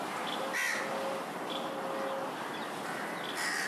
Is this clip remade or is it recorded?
recorded